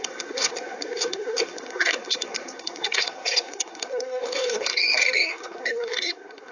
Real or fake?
fake